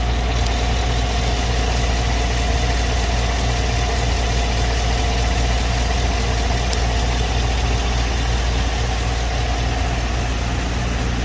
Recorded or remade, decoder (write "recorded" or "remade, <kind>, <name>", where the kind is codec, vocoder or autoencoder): recorded